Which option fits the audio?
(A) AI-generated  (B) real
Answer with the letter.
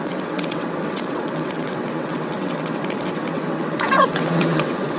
A